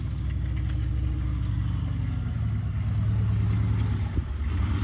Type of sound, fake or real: real